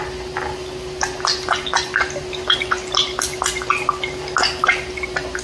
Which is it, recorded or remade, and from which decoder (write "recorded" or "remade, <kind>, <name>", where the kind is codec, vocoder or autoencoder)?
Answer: recorded